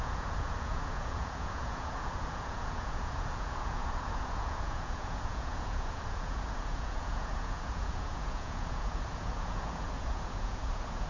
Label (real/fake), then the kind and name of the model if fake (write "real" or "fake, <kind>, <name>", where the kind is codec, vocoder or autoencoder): fake, vocoder, Vocos